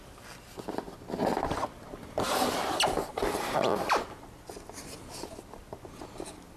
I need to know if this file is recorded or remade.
recorded